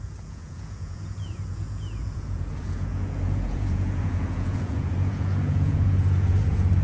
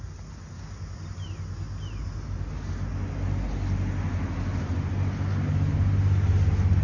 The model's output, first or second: first